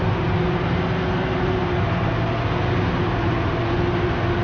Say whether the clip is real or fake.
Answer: real